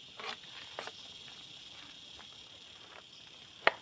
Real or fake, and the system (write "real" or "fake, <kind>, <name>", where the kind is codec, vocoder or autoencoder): real